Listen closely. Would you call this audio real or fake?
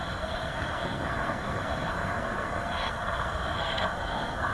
fake